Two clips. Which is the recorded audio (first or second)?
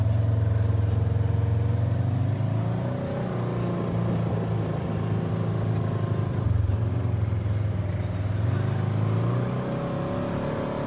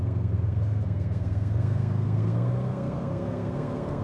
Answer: first